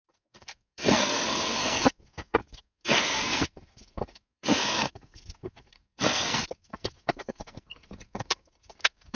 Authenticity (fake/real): fake